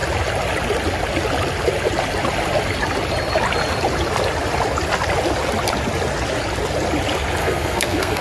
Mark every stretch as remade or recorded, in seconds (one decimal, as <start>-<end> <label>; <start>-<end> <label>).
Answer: 0.0-7.4 recorded; 7.4-8.2 remade